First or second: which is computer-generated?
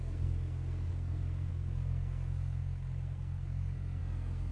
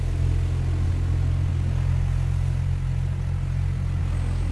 first